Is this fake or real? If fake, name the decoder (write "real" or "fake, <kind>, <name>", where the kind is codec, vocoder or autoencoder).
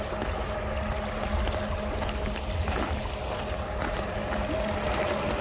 real